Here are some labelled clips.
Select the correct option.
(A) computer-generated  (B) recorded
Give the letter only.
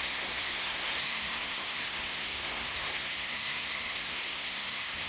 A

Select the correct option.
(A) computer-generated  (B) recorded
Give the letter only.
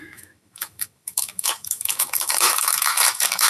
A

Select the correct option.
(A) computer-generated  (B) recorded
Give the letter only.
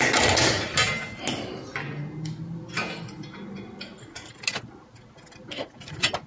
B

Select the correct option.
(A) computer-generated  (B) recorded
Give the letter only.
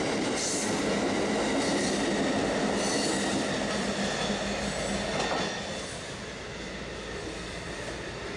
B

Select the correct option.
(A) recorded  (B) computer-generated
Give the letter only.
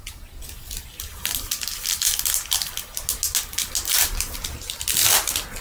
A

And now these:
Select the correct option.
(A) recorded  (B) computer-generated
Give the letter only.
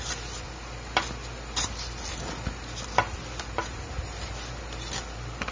A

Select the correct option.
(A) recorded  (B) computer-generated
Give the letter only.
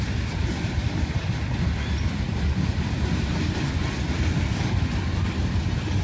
A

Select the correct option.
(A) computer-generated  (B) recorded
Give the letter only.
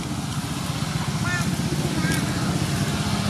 B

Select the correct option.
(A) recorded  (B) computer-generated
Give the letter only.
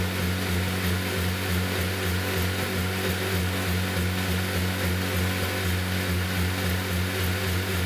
A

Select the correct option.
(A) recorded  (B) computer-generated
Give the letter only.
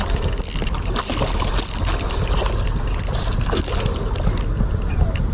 A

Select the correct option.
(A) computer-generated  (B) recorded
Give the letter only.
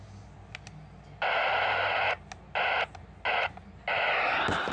B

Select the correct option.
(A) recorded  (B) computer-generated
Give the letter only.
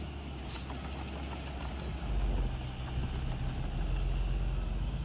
A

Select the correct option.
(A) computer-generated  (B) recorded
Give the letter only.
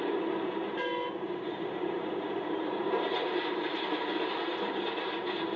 B